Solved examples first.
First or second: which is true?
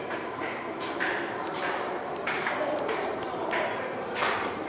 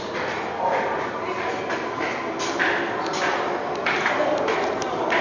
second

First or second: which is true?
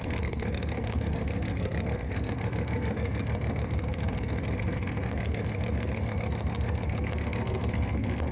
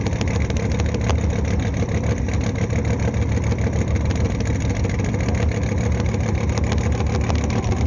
second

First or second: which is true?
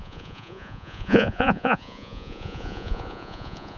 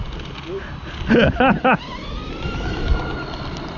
second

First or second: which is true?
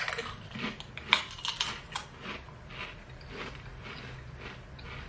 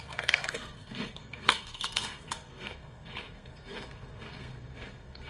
first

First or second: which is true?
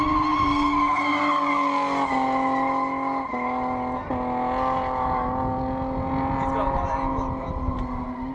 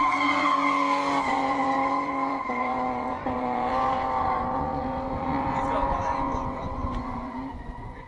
first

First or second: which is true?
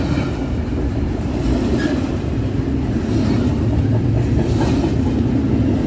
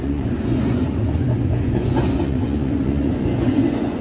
first